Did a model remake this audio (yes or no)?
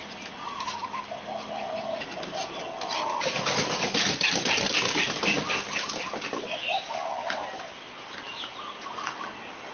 no